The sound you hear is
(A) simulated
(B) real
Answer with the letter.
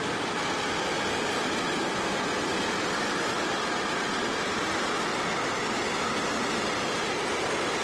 B